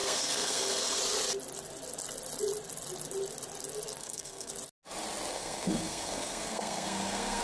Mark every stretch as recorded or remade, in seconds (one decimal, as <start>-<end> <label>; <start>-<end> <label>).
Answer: 0.0-1.0 remade; 1.0-4.0 recorded; 4.0-4.5 remade; 4.5-5.3 recorded; 5.3-7.4 remade